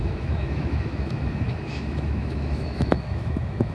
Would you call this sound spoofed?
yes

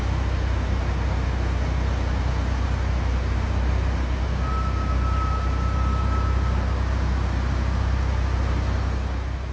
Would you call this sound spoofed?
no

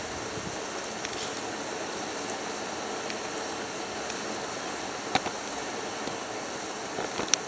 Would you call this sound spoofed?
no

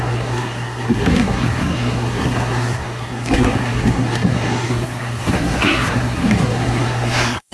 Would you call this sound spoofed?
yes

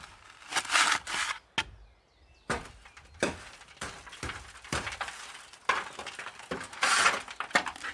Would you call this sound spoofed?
no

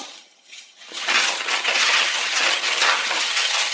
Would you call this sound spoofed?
yes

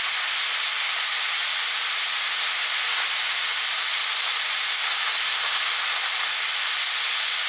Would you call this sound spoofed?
no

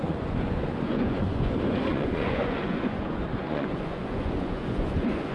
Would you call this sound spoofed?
yes